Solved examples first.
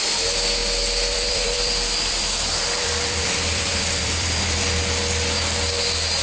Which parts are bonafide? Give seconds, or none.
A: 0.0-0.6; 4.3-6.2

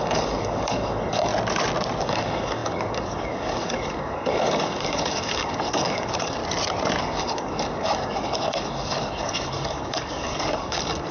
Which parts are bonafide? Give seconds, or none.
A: 1.3-2.0; 6.4-7.0

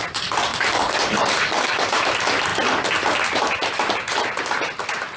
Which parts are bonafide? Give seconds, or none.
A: 0.0-0.5; 2.1-5.2